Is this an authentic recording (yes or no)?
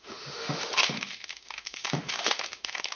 no